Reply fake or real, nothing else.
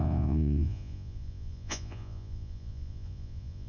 fake